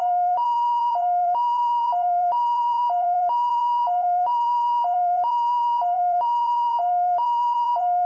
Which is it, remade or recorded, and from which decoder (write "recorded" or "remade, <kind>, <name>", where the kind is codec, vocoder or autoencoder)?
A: remade, vocoder, BigVGAN v2